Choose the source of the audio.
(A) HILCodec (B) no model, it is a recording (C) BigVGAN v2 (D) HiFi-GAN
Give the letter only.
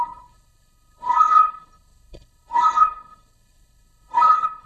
A